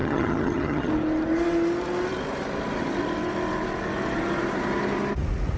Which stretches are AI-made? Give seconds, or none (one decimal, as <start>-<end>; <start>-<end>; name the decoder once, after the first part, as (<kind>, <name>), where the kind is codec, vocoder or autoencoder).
0.0-0.9 (vocoder, HiFi-GAN)

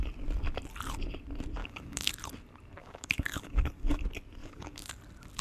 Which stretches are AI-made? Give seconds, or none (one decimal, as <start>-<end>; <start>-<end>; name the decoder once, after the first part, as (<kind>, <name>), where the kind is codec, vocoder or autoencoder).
1.6-2.1 (codec, DAC); 2.8-4.0; 4.4-5.0

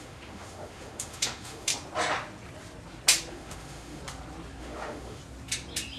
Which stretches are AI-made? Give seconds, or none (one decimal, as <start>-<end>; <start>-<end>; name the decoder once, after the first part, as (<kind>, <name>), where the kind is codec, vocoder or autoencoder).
0.0-1.7 (autoencoder, DAC-VAE); 3.3-4.0; 4.6-5.2

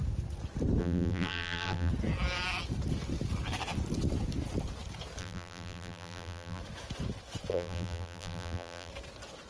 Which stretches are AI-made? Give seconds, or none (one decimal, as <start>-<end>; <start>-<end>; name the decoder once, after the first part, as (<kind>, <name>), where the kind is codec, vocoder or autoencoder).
0.8-1.9 (vocoder, BigVGAN v2); 5.2-6.6; 7.5-8.9

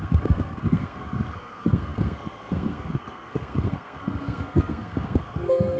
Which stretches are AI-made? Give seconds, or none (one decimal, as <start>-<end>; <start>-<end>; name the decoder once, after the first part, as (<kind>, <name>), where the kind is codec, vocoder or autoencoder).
0.0-5.8 (codec, SNAC)

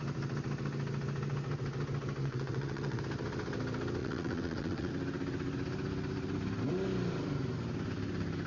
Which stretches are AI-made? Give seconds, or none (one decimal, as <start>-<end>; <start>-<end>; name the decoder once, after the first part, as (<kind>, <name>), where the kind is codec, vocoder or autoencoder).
2.2-3.0 (vocoder, WaveNeXt); 4.0-4.9

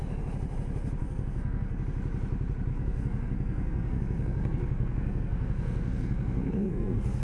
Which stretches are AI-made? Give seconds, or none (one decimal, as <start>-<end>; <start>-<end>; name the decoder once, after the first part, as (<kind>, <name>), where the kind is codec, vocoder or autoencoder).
1.0-1.8 (codec, SNAC); 2.7-7.2